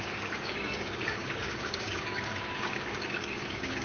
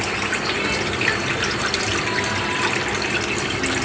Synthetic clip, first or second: first